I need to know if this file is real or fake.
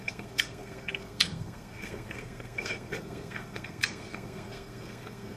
fake